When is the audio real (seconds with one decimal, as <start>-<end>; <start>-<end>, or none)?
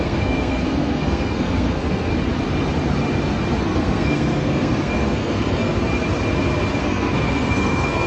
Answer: 2.1-3.6; 5.7-6.8